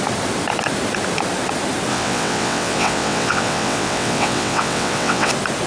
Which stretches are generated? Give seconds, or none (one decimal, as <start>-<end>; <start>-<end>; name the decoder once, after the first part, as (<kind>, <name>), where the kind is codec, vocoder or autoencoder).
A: 1.9-5.3 (vocoder, WaveNeXt)

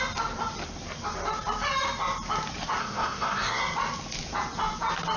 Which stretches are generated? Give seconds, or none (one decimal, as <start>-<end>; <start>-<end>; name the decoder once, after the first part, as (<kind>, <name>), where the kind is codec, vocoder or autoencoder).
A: 2.8-3.6 (codec, SNAC)

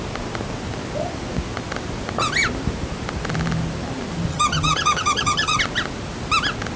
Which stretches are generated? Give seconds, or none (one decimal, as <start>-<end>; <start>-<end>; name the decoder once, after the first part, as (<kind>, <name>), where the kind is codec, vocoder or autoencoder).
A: 4.3-5.6 (vocoder, HiFi-GAN)

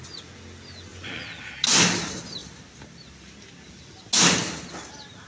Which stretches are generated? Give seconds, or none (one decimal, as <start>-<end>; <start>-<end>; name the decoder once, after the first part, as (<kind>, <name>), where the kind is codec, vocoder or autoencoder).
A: none

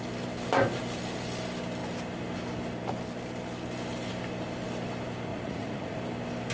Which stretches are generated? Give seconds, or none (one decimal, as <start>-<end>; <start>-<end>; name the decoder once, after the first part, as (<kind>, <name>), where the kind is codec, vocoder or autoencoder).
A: 5.3-6.0 (vocoder, Vocos)

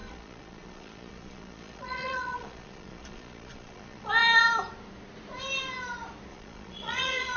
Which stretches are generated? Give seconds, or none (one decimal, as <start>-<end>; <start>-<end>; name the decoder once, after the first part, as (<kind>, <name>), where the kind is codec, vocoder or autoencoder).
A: 0.0-4.1 (vocoder, Vocos); 6.3-7.4